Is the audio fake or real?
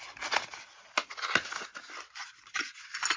real